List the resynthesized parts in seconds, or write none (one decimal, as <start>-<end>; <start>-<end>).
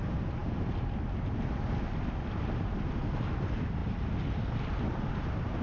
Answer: none